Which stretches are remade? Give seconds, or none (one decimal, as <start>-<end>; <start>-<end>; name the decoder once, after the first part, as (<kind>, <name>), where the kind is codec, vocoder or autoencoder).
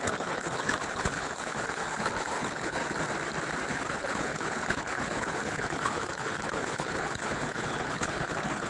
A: 0.0-2.8 (codec, HILCodec); 3.7-8.7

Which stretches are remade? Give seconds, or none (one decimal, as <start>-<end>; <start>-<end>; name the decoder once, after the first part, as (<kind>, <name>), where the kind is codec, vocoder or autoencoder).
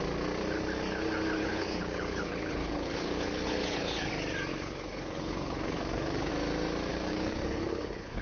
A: 1.4-4.1 (codec, HILCodec); 4.5-6.3; 6.9-8.2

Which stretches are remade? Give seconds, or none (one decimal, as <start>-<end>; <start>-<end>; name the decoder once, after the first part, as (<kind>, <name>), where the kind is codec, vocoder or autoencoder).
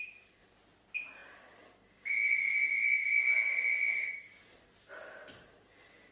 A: none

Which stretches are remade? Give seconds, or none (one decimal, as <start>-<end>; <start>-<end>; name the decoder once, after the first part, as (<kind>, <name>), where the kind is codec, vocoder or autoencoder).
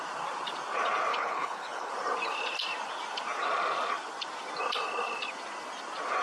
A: 1.1-1.9 (codec, HILCodec)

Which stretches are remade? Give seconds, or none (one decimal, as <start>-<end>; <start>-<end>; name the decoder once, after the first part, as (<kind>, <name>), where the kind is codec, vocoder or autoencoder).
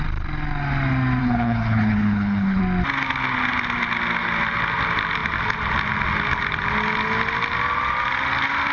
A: 1.2-2.6 (codec, HILCodec)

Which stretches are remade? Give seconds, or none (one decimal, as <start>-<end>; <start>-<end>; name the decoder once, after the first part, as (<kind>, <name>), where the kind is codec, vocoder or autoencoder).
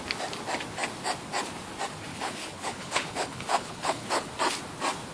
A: 2.1-4.3 (codec, HILCodec)